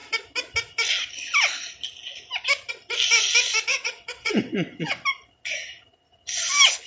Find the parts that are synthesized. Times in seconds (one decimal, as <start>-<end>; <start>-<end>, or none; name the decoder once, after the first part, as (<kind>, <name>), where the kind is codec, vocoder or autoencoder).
3.7-4.9 (vocoder, WaveNeXt)